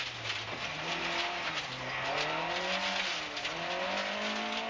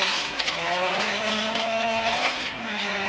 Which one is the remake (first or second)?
second